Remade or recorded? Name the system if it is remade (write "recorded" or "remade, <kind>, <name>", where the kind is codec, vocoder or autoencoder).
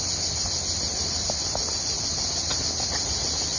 recorded